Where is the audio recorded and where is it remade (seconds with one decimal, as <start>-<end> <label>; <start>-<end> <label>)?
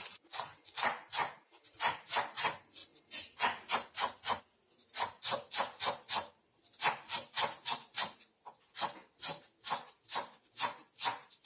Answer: 0.0-2.8 recorded; 2.8-4.4 remade; 4.4-11.5 recorded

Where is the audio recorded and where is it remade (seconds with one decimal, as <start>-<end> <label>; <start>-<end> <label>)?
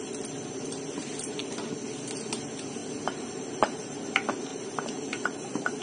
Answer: 0.0-2.8 recorded; 2.8-4.1 remade; 4.1-4.5 recorded; 4.5-5.8 remade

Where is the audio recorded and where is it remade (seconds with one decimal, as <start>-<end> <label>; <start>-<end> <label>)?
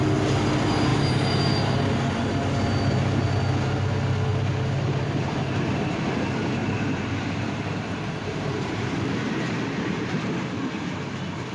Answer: 0.0-0.9 recorded; 0.9-1.8 remade; 1.8-6.6 recorded; 6.6-10.4 remade; 10.4-11.5 recorded